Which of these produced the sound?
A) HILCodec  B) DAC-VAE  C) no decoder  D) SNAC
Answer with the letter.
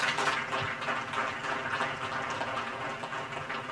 C